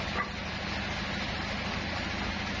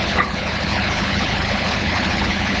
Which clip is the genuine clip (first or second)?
first